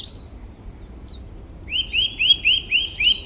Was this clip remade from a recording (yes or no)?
no